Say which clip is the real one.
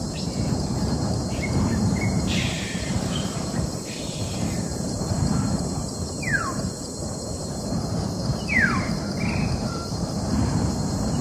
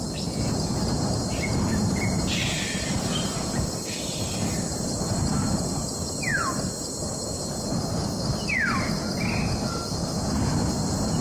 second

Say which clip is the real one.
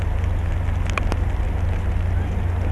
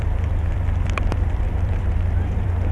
first